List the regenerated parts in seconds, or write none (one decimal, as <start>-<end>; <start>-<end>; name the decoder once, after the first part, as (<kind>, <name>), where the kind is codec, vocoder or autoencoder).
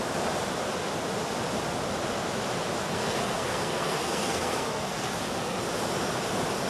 2.8-5.6 (codec, SNAC)